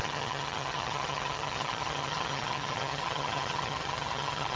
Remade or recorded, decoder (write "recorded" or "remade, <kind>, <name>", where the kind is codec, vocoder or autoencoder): remade, vocoder, HiFi-GAN